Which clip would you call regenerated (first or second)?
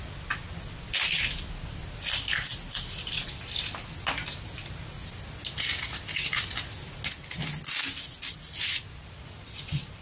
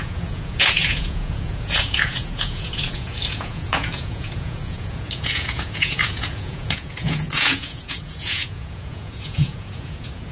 second